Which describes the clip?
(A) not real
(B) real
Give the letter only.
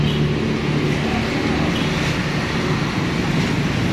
B